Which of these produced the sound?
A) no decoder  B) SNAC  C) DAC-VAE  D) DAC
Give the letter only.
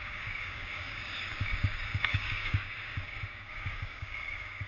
D